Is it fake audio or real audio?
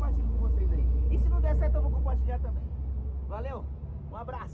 real